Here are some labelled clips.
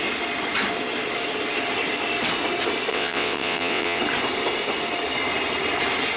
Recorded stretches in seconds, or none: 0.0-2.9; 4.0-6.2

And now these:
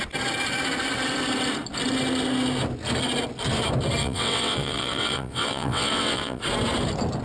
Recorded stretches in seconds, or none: 0.0-4.0; 6.4-7.2